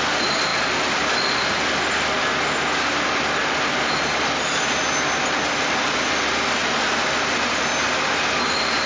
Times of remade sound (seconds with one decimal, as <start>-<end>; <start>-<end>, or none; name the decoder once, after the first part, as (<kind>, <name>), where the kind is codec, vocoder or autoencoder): none